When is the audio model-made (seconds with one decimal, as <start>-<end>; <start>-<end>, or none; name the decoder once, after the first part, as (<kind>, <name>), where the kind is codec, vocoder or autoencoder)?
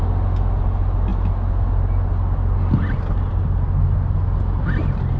none